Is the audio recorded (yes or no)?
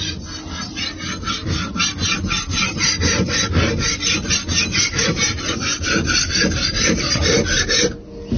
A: yes